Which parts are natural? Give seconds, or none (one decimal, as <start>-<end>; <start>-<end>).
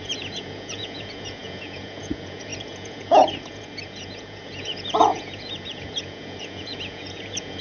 none